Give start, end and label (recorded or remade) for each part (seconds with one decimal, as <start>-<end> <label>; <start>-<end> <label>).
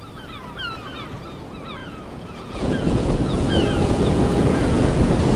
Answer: 0.0-1.8 recorded; 1.8-5.0 remade; 5.0-5.4 recorded